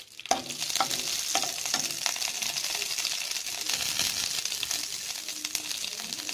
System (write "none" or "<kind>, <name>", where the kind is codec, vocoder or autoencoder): none